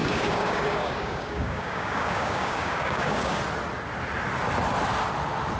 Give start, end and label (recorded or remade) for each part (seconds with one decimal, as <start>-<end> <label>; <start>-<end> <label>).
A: 0.0-3.4 remade; 3.4-5.6 recorded